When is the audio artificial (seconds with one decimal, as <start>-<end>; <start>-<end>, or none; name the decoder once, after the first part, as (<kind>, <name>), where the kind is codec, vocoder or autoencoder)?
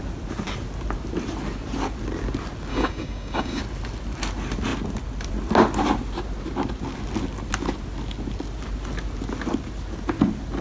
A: 2.7-3.6 (codec, DAC)